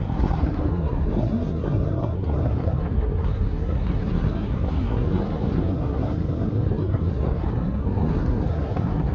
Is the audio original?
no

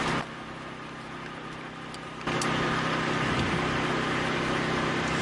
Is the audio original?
yes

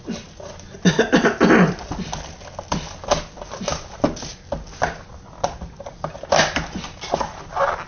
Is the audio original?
yes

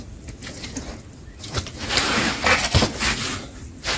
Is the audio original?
yes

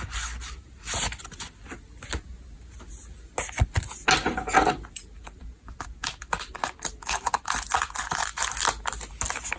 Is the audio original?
yes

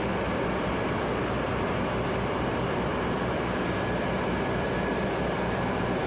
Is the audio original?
yes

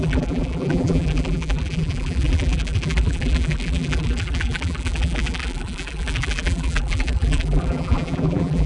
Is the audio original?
no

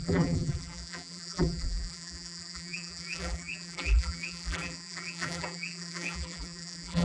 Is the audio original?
no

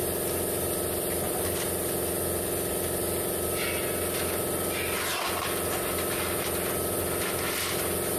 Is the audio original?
yes